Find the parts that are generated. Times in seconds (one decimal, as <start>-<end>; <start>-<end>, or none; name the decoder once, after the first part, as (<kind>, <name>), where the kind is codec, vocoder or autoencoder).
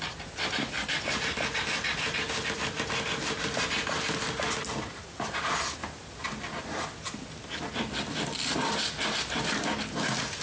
none